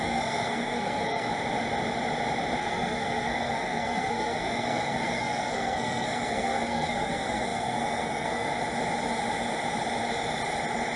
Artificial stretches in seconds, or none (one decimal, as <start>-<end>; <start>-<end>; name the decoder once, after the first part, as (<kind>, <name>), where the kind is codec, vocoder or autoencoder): 0.0-1.3 (codec, SNAC); 2.6-8.5